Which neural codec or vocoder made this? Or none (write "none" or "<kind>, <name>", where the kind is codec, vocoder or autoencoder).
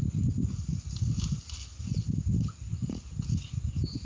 none